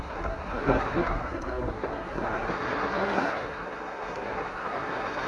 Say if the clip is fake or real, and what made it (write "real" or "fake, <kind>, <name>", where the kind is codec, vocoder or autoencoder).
fake, codec, SNAC